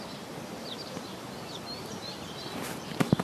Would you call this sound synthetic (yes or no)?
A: yes